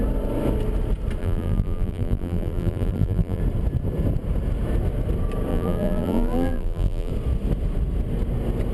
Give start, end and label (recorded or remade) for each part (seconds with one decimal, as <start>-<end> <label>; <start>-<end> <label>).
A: 0.0-1.2 recorded; 1.2-3.4 remade; 3.4-5.5 recorded; 5.5-7.1 remade; 7.1-8.7 recorded